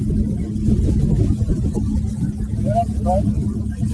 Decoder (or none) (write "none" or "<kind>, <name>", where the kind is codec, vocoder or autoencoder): none